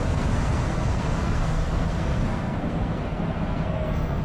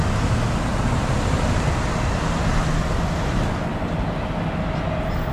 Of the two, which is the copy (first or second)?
first